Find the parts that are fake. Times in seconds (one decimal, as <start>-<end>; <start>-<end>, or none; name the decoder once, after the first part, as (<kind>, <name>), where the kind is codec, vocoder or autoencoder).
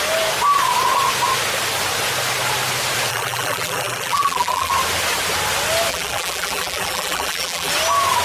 3.1-4.7 (vocoder, BigVGAN v2); 5.9-7.7